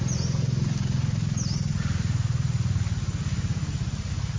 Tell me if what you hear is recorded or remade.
recorded